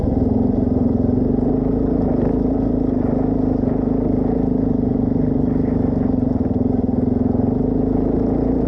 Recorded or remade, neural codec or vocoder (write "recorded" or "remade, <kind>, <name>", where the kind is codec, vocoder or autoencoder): recorded